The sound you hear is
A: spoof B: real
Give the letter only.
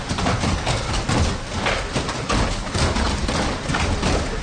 B